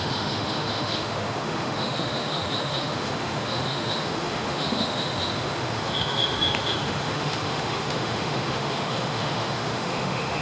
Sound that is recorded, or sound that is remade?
remade